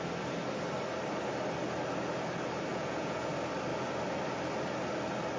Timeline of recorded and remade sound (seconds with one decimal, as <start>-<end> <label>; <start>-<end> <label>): 0.0-2.7 recorded; 2.7-3.3 remade; 3.3-5.4 recorded